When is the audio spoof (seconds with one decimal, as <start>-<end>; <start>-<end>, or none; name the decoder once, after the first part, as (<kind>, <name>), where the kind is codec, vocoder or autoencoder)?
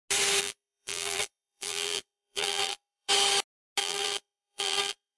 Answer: 0.4-3.1 (vocoder, BigVGAN v2); 3.8-5.2